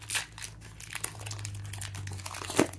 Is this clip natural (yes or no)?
yes